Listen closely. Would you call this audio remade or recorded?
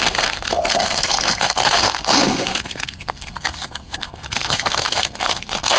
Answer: remade